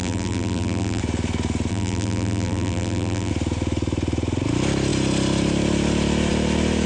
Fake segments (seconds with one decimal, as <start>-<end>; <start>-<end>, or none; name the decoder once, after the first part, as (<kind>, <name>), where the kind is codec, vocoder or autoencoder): 0.0-1.0 (vocoder, BigVGAN v2); 1.7-3.3